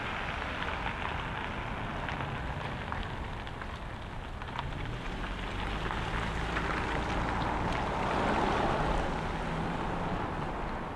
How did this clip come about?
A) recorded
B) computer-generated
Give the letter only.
A